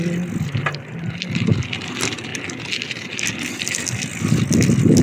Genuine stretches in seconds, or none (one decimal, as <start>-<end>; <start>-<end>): 0.0-5.0